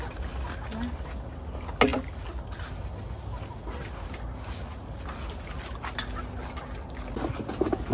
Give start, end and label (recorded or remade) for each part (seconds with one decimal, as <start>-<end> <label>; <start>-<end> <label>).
0.0-7.9 recorded